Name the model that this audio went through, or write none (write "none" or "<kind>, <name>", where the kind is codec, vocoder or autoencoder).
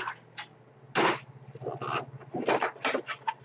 none